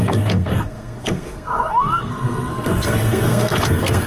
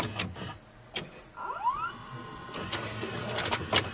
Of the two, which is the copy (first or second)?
first